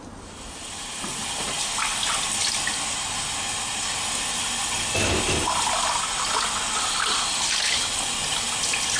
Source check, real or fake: real